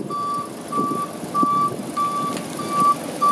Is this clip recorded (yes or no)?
yes